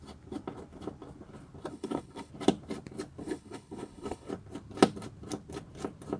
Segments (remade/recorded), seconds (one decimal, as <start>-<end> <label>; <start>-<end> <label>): 0.0-1.7 recorded; 1.7-2.3 remade; 2.3-3.2 recorded; 3.2-4.3 remade; 4.3-6.2 recorded

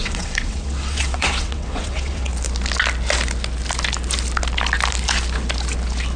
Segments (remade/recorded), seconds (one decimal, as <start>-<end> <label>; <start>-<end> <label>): 0.0-2.3 remade; 2.3-6.2 recorded

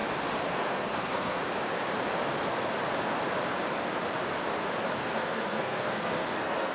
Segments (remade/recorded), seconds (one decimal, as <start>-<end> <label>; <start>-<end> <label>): 0.0-0.5 recorded; 0.5-1.4 remade; 1.4-5.0 recorded; 5.0-6.7 remade

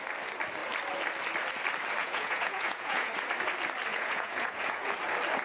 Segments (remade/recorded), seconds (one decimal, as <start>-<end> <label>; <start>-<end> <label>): 0.0-2.0 recorded; 2.0-3.1 remade; 3.1-3.9 recorded; 3.9-4.9 remade; 4.9-5.4 recorded

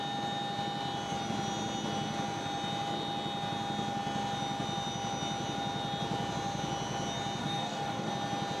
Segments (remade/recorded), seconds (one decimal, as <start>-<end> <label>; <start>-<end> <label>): 0.0-7.4 recorded; 7.4-8.1 remade; 8.1-8.6 recorded